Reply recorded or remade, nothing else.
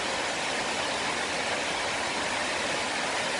recorded